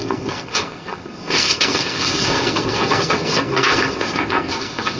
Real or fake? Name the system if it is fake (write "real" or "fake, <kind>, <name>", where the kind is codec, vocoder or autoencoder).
fake, codec, SNAC